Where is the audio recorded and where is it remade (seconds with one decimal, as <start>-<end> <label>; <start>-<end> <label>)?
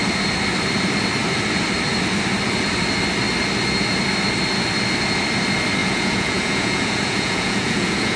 0.0-5.8 recorded; 5.8-8.2 remade